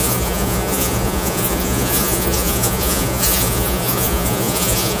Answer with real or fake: fake